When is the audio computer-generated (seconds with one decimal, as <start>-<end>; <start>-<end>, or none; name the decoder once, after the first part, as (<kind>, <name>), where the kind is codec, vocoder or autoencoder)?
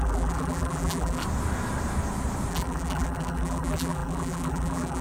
0.0-1.2 (vocoder, BigVGAN v2); 2.5-5.0